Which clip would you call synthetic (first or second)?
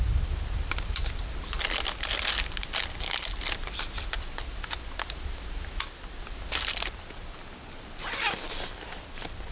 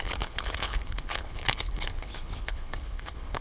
second